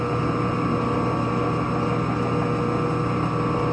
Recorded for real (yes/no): yes